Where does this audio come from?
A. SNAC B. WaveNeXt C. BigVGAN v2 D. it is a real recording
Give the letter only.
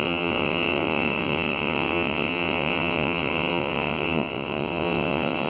B